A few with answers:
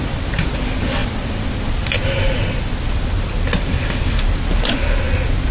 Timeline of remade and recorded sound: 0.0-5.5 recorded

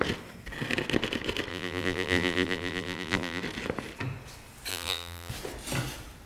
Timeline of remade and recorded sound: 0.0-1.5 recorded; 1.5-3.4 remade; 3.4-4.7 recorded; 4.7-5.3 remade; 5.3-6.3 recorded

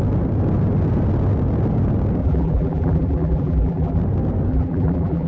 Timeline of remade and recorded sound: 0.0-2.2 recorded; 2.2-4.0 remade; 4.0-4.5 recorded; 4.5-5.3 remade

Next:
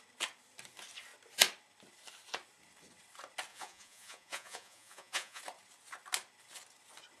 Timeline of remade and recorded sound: 0.0-3.5 recorded; 3.5-5.4 remade; 5.4-7.2 recorded

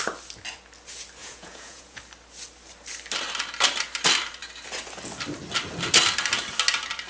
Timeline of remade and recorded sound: 0.0-1.2 recorded; 1.2-2.0 remade; 2.0-7.1 recorded

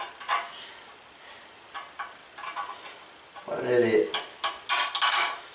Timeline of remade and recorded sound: 0.0-5.5 recorded

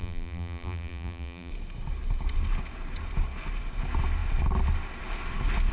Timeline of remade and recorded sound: 0.0-1.5 remade; 1.5-5.7 recorded

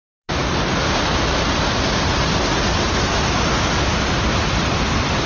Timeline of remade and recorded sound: 0.0-3.9 recorded; 3.9-5.3 remade